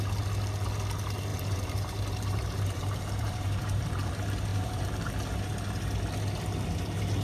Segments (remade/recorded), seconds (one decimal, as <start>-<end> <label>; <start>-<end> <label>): 0.0-1.3 recorded; 1.3-4.1 remade; 4.1-4.5 recorded; 4.5-5.1 remade; 5.1-7.2 recorded